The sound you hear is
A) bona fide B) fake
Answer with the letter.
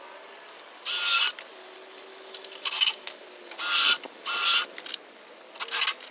A